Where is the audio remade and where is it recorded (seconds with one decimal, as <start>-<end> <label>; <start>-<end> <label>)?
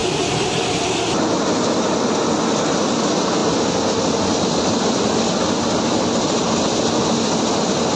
0.0-8.0 recorded